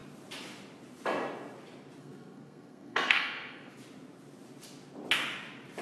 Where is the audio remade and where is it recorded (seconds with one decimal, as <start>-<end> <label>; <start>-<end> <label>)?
0.0-2.0 recorded; 2.0-3.7 remade; 3.7-5.8 recorded